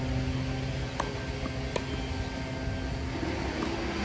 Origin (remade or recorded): recorded